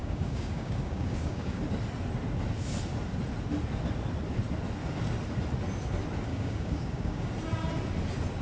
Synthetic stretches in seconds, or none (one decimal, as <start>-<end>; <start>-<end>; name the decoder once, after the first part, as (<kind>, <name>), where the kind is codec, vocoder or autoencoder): 0.0-1.6 (codec, DAC); 6.3-7.3